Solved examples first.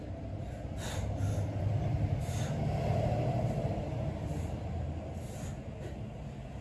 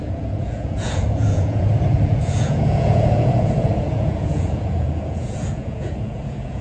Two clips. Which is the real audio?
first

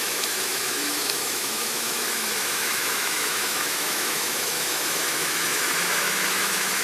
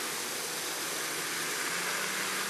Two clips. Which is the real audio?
second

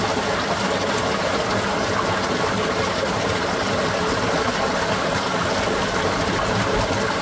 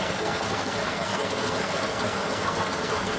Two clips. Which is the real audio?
first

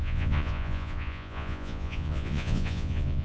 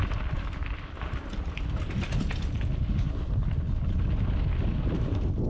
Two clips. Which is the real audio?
second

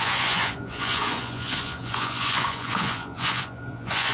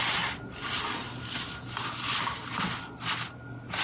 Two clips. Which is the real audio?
second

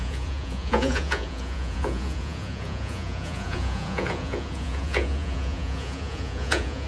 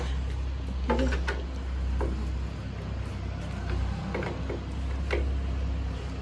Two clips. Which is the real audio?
second